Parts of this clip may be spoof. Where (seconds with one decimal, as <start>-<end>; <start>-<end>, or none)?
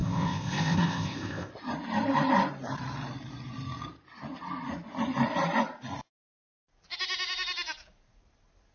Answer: 0.0-1.5